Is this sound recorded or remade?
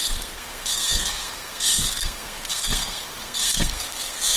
remade